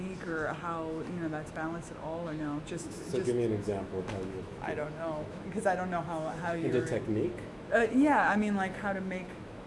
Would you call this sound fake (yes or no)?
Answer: yes